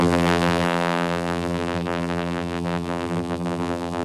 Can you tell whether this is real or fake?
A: fake